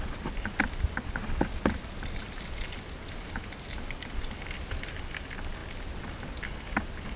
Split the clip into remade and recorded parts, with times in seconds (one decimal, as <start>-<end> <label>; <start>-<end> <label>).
0.0-7.2 recorded